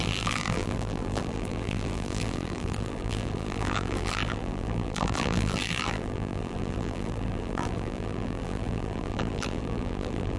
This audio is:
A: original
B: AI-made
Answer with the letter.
B